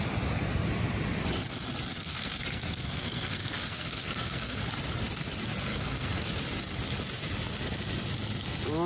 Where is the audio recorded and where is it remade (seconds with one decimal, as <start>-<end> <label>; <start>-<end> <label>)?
0.0-1.9 recorded; 1.9-4.6 remade; 4.6-5.7 recorded; 5.7-6.3 remade; 6.3-8.9 recorded